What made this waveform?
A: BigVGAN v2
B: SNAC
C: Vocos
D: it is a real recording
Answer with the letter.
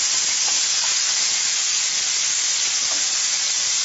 D